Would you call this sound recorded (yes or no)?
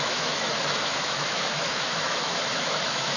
no